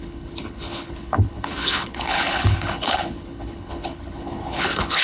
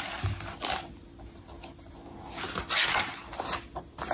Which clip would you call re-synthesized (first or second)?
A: first